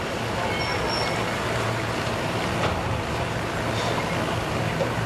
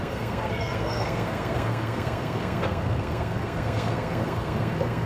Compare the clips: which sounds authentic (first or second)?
first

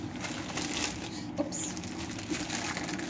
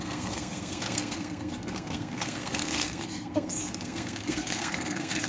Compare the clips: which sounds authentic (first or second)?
first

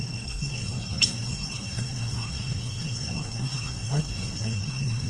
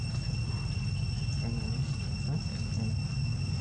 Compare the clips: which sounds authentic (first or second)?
second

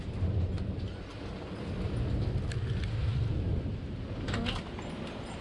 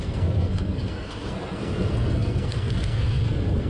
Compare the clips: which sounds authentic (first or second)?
first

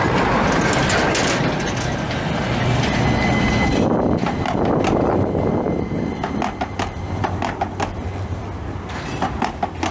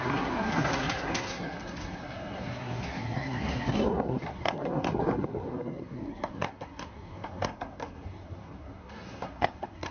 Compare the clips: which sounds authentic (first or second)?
first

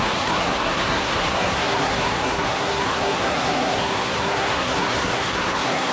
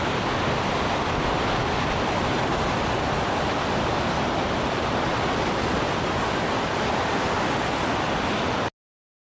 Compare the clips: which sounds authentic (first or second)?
second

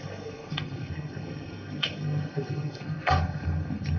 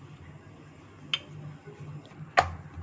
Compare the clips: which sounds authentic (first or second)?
second